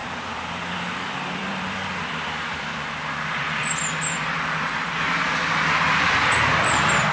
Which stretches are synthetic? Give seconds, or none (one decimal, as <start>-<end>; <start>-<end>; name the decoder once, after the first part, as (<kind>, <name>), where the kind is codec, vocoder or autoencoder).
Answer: 0.0-4.3 (vocoder, BigVGAN v2)